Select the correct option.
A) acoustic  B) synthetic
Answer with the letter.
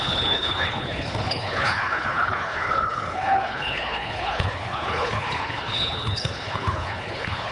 B